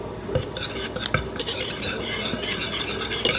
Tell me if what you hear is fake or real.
real